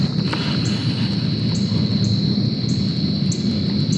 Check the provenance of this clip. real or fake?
real